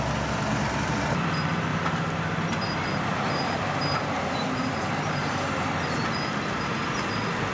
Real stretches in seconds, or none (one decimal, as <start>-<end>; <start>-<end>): 0.0-1.7; 5.7-7.5